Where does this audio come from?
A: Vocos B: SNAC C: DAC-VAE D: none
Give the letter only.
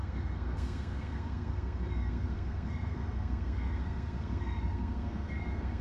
B